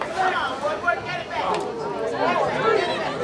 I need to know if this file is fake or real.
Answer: real